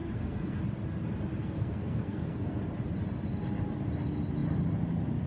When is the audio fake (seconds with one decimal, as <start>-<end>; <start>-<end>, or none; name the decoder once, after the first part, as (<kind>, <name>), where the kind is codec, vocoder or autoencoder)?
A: 0.0-0.6 (codec, SNAC); 1.4-2.6